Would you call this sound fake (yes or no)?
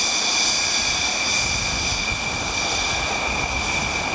no